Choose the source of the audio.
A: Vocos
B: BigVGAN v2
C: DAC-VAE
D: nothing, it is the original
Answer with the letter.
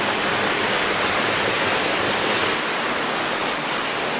D